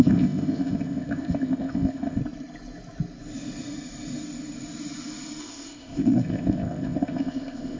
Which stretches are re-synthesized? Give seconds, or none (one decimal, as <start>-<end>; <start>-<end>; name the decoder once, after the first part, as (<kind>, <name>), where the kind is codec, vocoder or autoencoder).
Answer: 0.0-2.2 (codec, ZipCodec); 5.4-7.8